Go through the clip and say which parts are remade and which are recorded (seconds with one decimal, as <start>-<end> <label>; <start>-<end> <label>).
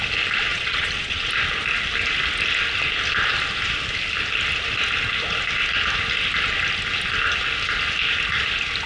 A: 0.0-0.5 recorded; 0.5-1.3 remade; 1.3-8.9 recorded